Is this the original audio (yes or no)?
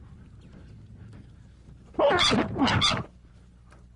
yes